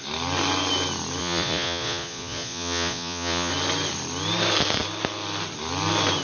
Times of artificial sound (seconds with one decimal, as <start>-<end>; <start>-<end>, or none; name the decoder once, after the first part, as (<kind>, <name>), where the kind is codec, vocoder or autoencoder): 1.2-3.5 (vocoder, Vocos)